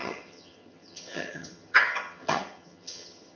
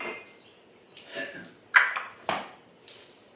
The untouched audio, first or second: second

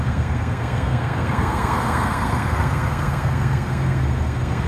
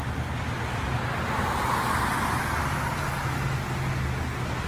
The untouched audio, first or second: second